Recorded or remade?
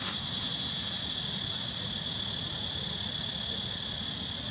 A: recorded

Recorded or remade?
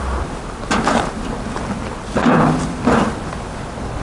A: remade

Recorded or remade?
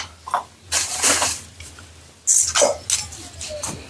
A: recorded